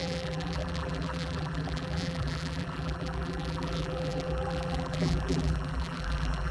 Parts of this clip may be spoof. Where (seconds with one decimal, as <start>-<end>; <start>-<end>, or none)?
0.0-6.5